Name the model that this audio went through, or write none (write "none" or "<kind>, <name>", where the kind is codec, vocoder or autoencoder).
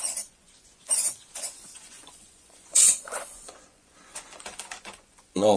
vocoder, Vocos